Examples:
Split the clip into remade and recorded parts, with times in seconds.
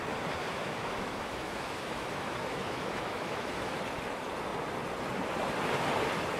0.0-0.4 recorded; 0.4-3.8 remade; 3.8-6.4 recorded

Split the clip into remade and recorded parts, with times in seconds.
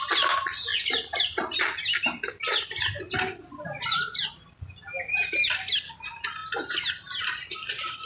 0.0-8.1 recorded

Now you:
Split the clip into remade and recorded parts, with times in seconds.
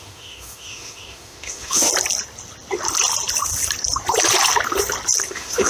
0.0-1.9 remade; 1.9-5.3 recorded; 5.3-5.7 remade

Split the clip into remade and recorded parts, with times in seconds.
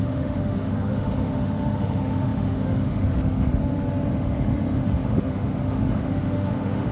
0.0-3.5 remade; 3.5-4.1 recorded; 4.1-6.9 remade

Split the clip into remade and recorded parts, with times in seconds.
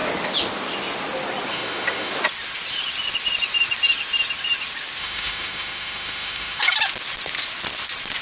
0.0-1.5 recorded; 1.5-2.1 remade; 2.1-5.0 recorded; 5.0-6.6 remade; 6.6-8.2 recorded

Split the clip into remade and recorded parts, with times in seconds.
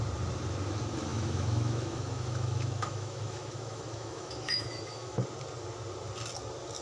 0.0-1.1 recorded; 1.1-5.2 remade; 5.2-6.8 recorded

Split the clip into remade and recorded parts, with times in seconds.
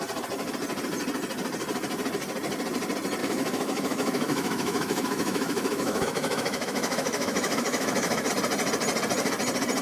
0.0-3.2 recorded; 3.2-8.3 remade; 8.3-9.8 recorded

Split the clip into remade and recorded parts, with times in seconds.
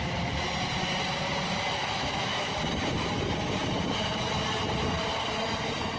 0.0-1.8 recorded; 1.8-2.5 remade; 2.5-6.0 recorded